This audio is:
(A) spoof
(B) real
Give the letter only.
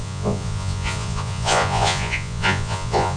A